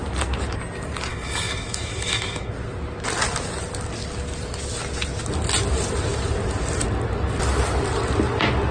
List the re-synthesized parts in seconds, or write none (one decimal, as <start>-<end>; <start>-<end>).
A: 1.1-2.5

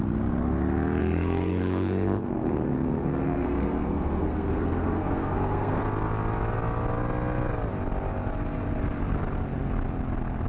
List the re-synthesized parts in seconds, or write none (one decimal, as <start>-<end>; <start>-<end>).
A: 1.0-5.8

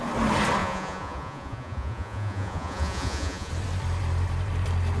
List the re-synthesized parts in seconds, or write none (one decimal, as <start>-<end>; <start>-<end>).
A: 0.6-3.5